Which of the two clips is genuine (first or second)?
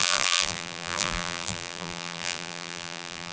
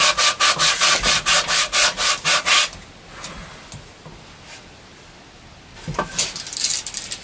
second